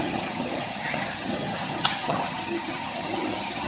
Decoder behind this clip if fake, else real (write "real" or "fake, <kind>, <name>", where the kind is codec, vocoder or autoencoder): fake, vocoder, HiFi-GAN